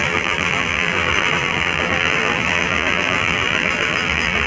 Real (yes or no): no